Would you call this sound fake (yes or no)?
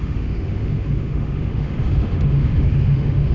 yes